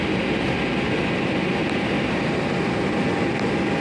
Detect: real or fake real